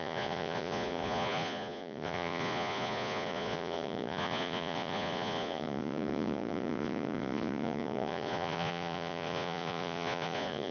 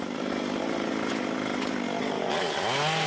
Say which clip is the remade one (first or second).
first